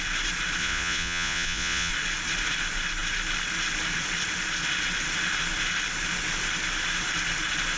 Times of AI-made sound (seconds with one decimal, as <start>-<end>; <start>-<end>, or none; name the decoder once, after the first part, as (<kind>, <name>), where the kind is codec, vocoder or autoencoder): 0.6-1.9 (vocoder, Vocos)